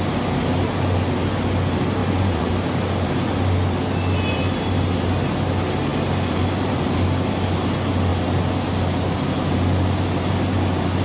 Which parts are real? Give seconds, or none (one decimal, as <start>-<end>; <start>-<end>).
0.0-2.0; 2.5-11.0